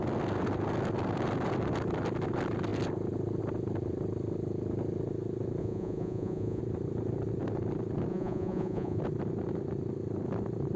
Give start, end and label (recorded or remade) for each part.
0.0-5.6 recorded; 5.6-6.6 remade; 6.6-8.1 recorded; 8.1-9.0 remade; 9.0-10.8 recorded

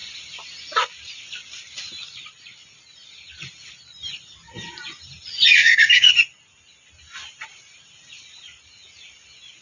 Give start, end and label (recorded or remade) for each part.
0.0-5.6 recorded; 5.6-6.1 remade; 6.1-9.6 recorded

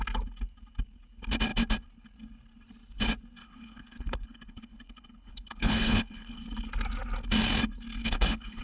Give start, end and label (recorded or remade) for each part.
0.0-3.4 recorded; 3.4-6.4 remade; 6.4-8.0 recorded; 8.0-8.6 remade

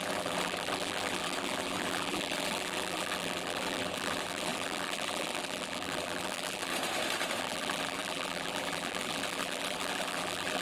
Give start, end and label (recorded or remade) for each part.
0.0-6.7 remade; 6.7-7.4 recorded; 7.4-10.6 remade